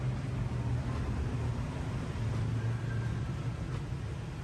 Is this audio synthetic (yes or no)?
no